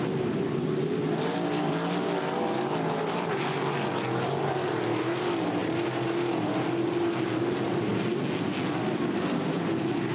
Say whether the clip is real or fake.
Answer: real